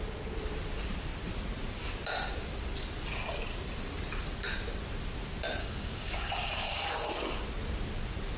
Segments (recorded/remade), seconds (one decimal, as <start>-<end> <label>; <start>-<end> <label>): 0.0-5.6 recorded; 5.6-7.1 remade; 7.1-8.4 recorded

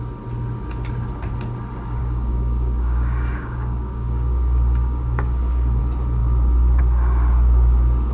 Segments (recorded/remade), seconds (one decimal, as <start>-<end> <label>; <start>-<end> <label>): 0.0-2.0 recorded; 2.0-5.8 remade; 5.8-8.1 recorded

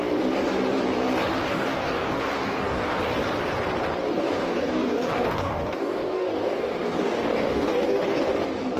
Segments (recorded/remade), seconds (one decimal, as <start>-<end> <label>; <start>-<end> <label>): 0.0-1.5 recorded; 1.5-3.0 remade; 3.0-4.1 recorded; 4.1-8.2 remade; 8.2-8.8 recorded